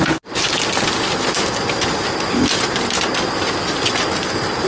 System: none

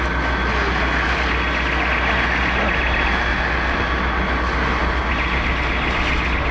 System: none